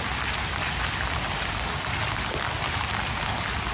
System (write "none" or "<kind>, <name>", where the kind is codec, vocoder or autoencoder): none